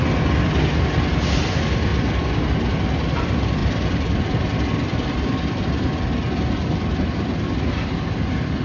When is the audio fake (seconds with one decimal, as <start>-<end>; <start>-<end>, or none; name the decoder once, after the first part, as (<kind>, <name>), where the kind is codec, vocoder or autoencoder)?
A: 3.6-5.6 (vocoder, BigVGAN v2)